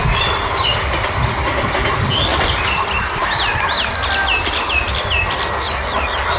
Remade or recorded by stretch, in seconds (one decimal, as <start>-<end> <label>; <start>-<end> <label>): 0.0-6.4 recorded